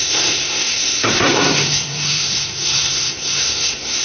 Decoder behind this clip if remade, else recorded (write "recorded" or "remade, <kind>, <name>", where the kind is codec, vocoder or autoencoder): remade, codec, SNAC